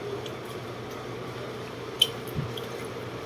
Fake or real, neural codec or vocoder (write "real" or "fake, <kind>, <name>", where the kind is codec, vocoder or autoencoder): fake, vocoder, BigVGAN v2